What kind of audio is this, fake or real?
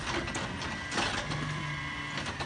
real